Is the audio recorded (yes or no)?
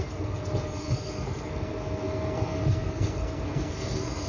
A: no